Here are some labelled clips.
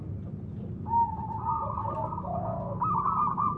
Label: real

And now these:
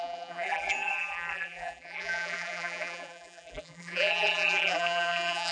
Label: fake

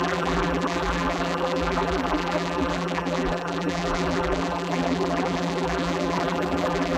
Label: fake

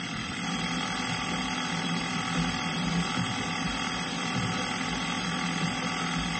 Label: real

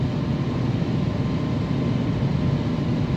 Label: real